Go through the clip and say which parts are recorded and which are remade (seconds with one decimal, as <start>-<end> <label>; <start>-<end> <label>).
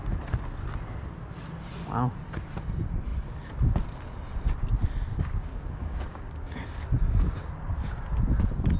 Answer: 0.0-5.1 recorded; 5.1-6.8 remade; 6.8-8.8 recorded